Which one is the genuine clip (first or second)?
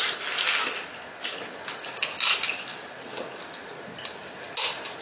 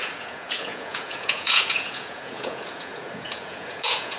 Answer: first